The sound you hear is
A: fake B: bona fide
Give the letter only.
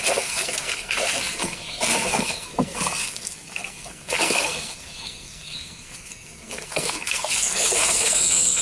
A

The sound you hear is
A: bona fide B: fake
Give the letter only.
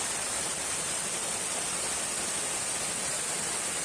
A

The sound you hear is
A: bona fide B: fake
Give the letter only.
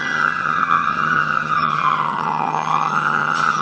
B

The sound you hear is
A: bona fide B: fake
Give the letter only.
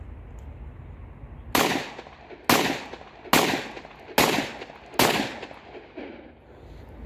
A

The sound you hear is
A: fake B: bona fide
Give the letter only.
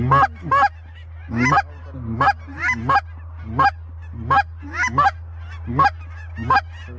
B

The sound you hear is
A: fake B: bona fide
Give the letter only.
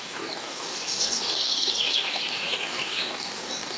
A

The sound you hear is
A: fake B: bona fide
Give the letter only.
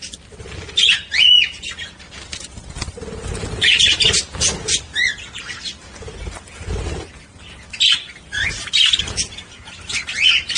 B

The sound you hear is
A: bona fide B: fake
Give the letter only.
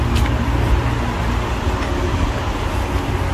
A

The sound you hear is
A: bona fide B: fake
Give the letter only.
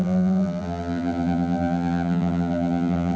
B